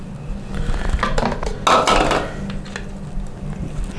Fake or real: real